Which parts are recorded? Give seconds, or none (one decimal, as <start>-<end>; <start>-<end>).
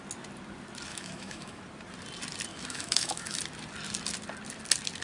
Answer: 0.0-0.9; 1.6-2.5; 3.4-5.0